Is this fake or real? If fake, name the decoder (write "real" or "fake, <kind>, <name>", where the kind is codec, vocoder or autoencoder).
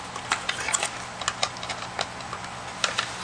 real